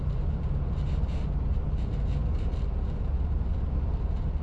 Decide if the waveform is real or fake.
fake